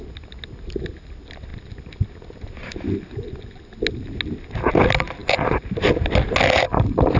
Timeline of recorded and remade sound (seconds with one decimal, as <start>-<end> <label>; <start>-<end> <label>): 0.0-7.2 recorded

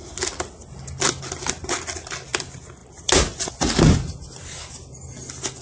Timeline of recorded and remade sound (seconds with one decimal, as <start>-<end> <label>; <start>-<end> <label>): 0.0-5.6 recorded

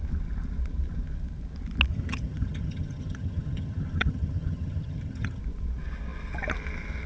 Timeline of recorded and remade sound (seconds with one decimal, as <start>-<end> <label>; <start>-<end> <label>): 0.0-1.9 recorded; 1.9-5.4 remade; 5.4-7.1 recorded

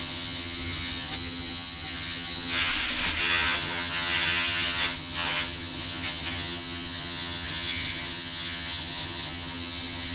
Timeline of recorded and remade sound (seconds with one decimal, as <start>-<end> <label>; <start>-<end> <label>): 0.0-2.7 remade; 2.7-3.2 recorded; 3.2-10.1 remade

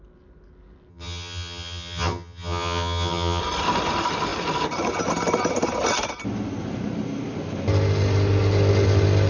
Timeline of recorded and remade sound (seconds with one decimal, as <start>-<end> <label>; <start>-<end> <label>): 0.0-0.9 recorded; 0.9-3.4 remade; 3.4-9.3 recorded